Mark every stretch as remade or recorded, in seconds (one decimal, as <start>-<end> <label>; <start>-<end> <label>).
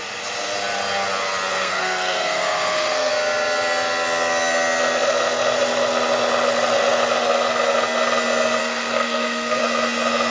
0.0-1.5 recorded; 1.5-3.1 remade; 3.1-8.6 recorded; 8.6-9.6 remade; 9.6-10.3 recorded